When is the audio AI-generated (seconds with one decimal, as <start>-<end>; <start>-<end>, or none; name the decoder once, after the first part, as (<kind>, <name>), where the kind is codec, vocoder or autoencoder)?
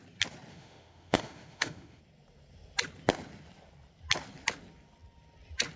0.5-2.0 (autoencoder, DAC-VAE)